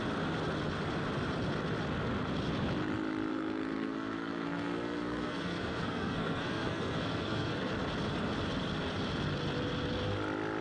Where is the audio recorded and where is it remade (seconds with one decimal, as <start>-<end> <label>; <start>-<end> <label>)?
0.0-3.3 recorded; 3.3-7.7 remade; 7.7-10.6 recorded